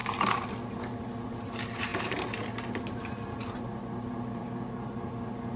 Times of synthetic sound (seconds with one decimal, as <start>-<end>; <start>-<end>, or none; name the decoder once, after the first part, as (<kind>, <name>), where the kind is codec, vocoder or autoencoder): 1.0-5.6 (vocoder, BigVGAN v2)

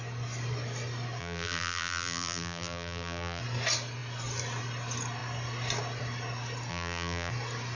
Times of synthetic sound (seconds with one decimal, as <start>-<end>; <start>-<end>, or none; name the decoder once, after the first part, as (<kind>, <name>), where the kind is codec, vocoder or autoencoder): 1.2-3.4 (vocoder, BigVGAN v2); 6.7-7.3

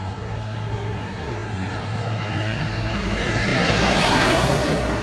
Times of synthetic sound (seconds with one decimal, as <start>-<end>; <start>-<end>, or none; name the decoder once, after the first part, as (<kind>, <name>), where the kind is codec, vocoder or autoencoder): 0.0-5.0 (codec, SNAC)

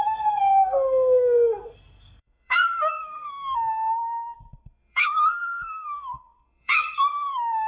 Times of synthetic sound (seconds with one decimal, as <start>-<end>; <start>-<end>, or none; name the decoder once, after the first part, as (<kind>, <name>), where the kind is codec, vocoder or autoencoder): 0.0-7.7 (codec, SNAC)

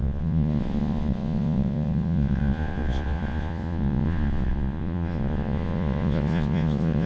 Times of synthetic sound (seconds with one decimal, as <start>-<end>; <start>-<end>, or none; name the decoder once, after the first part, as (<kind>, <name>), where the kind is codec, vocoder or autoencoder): 0.0-7.1 (vocoder, Vocos)

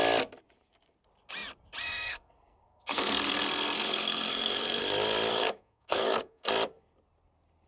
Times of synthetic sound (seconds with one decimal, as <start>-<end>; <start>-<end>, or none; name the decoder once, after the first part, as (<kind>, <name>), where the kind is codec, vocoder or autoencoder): 1.8-4.8 (codec, SNAC); 5.3-6.5

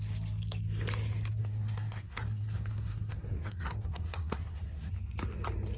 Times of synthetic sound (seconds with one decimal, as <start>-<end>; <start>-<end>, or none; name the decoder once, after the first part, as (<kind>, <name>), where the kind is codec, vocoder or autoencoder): 1.4-4.9 (codec, SNAC)

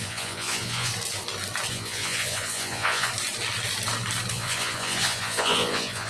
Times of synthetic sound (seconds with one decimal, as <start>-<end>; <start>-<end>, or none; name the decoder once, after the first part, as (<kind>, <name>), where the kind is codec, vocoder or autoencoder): 0.0-0.9 (vocoder, Vocos); 1.7-3.1; 4.3-6.1